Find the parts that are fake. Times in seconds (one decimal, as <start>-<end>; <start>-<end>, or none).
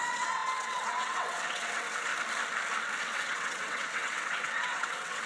0.0-2.1; 3.0-5.3